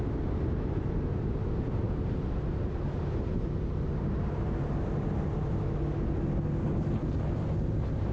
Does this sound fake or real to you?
real